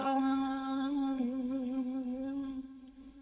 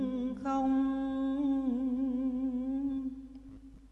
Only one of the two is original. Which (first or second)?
second